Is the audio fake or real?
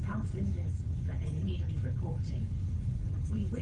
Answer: fake